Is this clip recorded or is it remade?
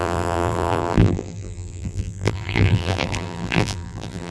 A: remade